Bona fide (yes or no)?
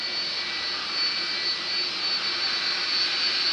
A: yes